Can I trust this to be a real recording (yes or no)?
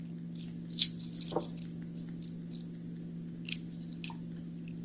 yes